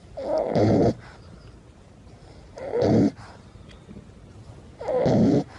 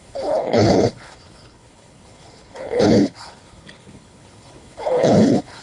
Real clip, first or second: first